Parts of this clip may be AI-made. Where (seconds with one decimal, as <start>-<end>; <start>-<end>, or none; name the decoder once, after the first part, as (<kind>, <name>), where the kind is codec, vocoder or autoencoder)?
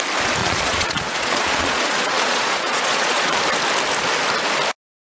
0.4-3.4 (vocoder, Vocos)